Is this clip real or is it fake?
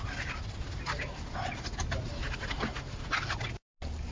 real